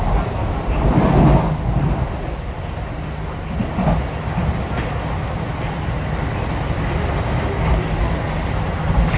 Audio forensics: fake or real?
real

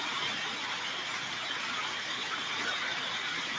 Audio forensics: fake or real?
fake